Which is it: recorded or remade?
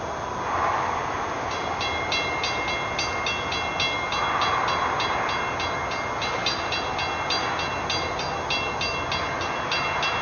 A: recorded